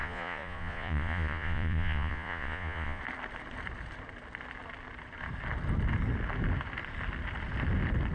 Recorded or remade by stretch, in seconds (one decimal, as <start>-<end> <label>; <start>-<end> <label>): 0.0-3.0 remade; 3.0-8.1 recorded